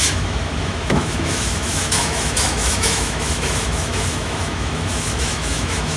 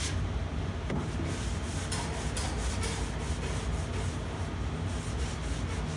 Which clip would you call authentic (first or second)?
second